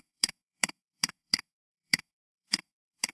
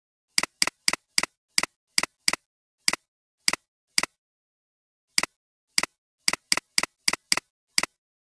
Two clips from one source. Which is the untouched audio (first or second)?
second